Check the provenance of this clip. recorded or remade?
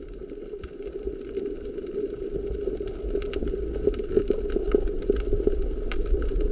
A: recorded